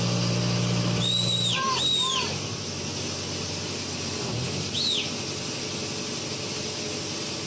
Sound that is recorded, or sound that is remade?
recorded